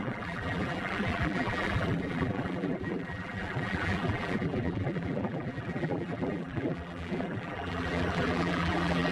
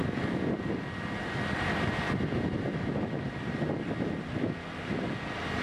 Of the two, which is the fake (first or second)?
first